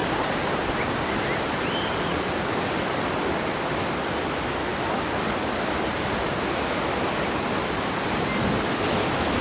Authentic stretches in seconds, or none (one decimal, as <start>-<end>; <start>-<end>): 0.0-9.4